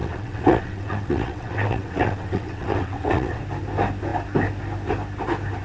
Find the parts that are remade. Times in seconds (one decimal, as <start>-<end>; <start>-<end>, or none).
0.0-3.4